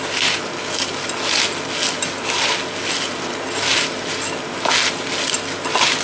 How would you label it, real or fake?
real